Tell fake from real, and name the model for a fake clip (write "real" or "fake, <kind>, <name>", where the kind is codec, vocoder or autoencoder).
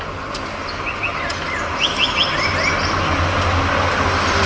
real